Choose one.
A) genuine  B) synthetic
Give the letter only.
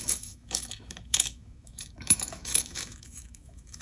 B